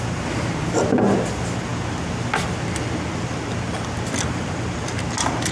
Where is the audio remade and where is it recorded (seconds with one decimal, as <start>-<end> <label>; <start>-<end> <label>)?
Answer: 0.0-5.5 recorded